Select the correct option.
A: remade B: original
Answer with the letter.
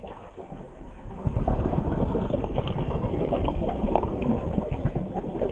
A